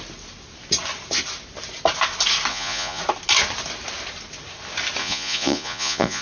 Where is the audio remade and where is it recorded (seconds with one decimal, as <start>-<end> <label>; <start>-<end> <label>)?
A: 0.0-2.5 recorded; 2.5-3.0 remade; 3.0-5.0 recorded; 5.0-6.2 remade